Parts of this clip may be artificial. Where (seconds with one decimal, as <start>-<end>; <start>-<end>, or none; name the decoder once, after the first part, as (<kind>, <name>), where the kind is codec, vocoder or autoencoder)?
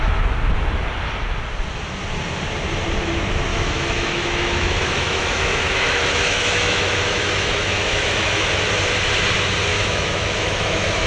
3.5-8.5 (autoencoder, DAC-VAE); 9.7-11.1